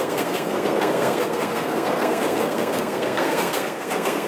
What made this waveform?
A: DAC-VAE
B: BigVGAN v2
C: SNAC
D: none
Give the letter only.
C